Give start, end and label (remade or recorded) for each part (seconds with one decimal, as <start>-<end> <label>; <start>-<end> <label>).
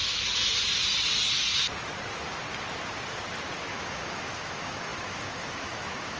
0.0-3.7 recorded; 3.7-6.2 remade